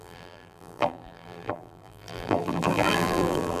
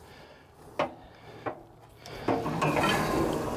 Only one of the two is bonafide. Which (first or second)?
second